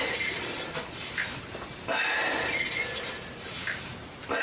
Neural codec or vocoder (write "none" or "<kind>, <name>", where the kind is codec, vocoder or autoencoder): none